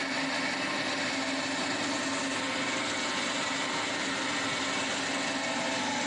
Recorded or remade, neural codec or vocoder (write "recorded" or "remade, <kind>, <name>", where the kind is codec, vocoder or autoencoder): recorded